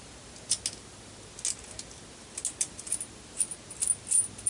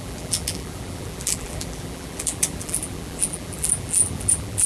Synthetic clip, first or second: second